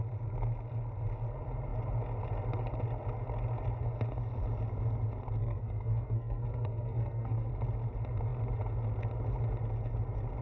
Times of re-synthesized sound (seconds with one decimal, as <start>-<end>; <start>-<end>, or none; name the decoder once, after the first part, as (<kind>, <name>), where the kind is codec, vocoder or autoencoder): 5.4-7.5 (codec, SNAC)